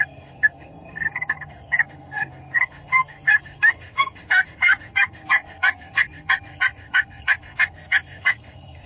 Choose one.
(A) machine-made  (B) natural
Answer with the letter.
A